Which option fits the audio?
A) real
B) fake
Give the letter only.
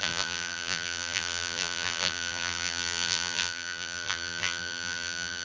B